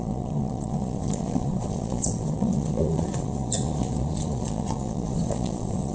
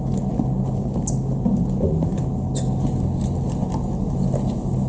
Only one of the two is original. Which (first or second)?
second